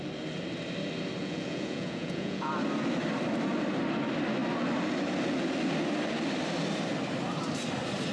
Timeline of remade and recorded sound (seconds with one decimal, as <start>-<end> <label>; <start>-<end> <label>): 0.0-1.2 recorded; 1.2-2.5 remade; 2.5-8.1 recorded